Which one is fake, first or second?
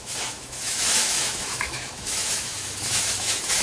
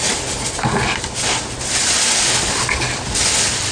first